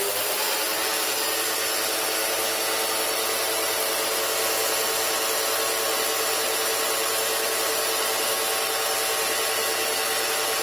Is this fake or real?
real